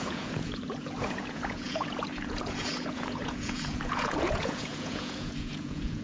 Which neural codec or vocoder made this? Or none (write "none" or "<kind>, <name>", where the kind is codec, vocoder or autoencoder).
vocoder, Vocos